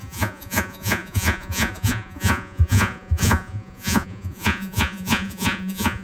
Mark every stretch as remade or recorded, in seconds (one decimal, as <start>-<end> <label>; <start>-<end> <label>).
0.0-6.0 remade